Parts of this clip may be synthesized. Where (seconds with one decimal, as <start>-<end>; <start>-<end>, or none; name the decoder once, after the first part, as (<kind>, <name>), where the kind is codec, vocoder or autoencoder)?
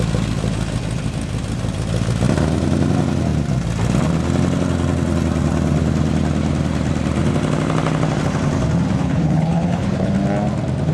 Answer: 9.0-10.1 (codec, HILCodec)